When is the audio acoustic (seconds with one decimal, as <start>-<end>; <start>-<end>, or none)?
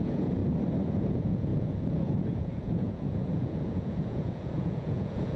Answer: 0.4-0.9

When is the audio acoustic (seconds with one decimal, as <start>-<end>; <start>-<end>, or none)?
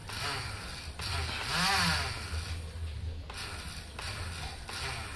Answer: 0.0-5.2